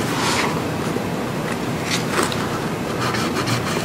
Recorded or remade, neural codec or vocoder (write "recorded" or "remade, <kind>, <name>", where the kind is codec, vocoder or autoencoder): recorded